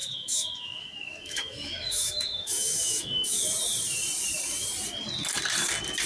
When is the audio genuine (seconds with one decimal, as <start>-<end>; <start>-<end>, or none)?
3.4-6.1